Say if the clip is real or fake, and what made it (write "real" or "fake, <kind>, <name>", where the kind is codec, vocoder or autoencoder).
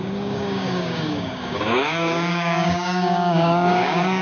fake, codec, DAC